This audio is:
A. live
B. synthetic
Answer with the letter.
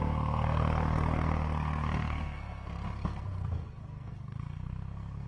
B